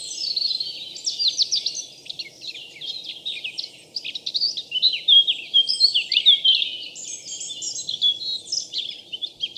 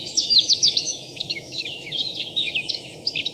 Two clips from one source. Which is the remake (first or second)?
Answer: second